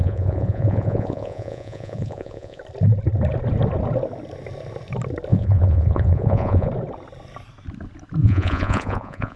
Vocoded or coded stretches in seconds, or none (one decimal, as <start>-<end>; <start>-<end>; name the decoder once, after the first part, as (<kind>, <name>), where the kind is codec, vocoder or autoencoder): 0.0-2.6 (vocoder, Vocos); 5.3-6.7; 8.2-9.4